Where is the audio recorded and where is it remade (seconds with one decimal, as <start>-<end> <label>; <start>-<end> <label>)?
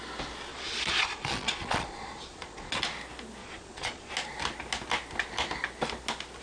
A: 0.0-0.5 recorded; 0.5-2.8 remade; 2.8-3.4 recorded; 3.4-4.1 remade; 4.1-6.4 recorded